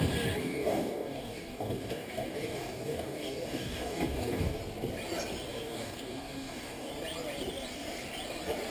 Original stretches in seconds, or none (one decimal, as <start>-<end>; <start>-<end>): 0.0-0.4; 4.6-5.5; 6.9-8.7